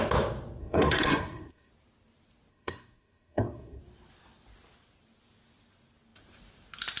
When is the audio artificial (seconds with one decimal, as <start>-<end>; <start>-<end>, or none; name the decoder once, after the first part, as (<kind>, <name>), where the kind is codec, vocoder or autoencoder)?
0.6-1.7 (codec, SNAC); 2.5-3.8